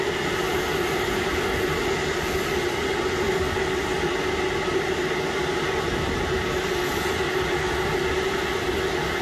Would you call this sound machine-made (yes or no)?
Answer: no